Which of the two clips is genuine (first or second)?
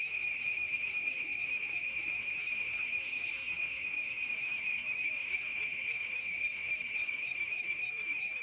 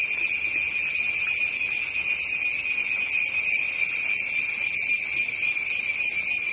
second